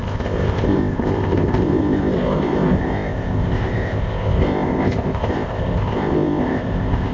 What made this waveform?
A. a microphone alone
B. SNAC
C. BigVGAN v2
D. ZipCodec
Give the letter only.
D